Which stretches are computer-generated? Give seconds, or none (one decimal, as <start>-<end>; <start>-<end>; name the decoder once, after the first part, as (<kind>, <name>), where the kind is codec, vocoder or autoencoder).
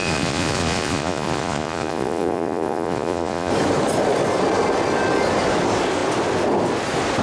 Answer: 0.0-3.5 (vocoder, Vocos)